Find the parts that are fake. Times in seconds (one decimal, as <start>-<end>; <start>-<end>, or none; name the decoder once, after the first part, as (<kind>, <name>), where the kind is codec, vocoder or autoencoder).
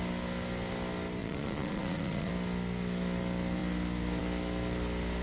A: 1.2-2.3 (vocoder, Vocos)